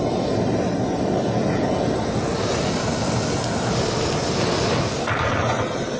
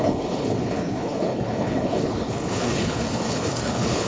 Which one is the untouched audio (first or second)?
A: first